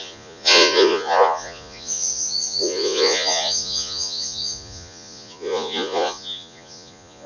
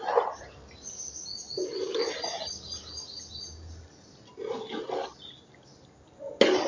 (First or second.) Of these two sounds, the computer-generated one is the first